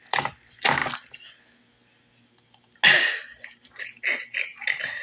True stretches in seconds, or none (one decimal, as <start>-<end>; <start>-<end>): 0.0-5.0